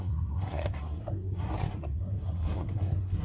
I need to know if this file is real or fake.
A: fake